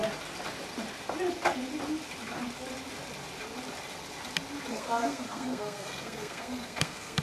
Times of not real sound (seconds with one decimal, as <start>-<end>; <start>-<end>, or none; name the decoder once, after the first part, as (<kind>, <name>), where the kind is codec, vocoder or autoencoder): 4.7-7.2 (codec, SNAC)